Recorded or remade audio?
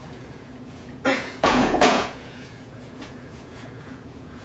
remade